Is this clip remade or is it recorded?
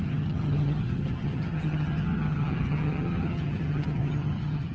remade